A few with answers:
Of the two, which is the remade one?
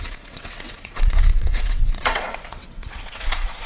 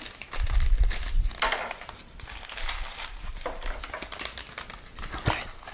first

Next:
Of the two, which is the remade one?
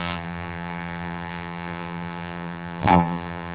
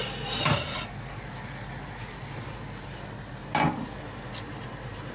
first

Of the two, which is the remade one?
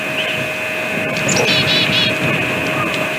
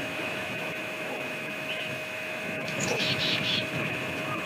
second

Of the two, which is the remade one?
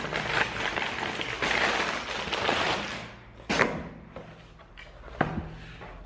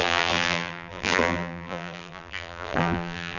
second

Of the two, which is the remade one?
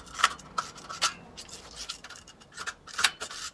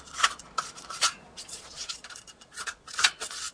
second